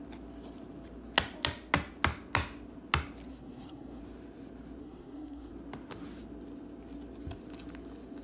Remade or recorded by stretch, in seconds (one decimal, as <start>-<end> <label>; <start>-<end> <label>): 0.0-3.3 recorded; 3.3-4.0 remade; 4.0-4.8 recorded; 4.8-5.5 remade; 5.5-8.2 recorded